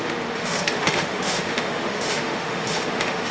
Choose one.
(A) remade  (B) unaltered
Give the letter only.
A